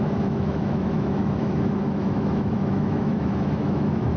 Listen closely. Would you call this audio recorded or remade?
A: remade